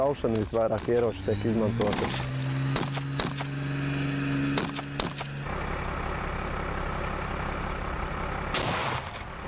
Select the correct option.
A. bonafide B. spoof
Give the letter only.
A